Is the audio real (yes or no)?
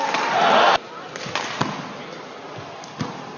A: yes